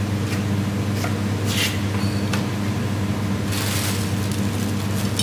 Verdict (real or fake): real